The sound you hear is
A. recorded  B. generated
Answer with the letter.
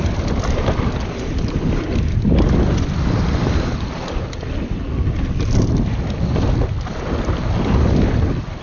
A